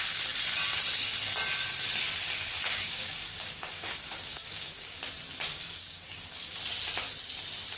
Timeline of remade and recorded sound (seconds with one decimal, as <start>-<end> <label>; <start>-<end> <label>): 0.0-2.6 recorded; 2.6-5.0 remade; 5.0-5.5 recorded; 5.5-6.6 remade; 6.6-7.8 recorded